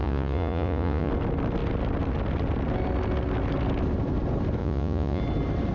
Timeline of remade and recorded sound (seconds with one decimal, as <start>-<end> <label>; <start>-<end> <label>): 0.0-1.1 remade; 1.1-4.6 recorded; 4.6-5.2 remade; 5.2-5.7 recorded